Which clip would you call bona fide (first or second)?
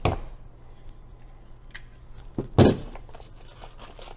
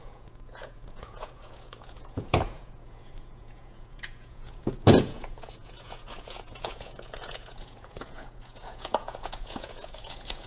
first